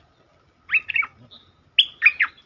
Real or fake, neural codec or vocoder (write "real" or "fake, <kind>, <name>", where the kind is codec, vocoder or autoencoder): real